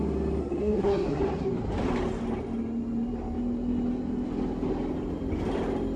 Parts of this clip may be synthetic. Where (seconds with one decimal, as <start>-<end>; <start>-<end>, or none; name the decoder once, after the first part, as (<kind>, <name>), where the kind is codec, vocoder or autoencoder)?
0.4-1.2 (codec, SNAC)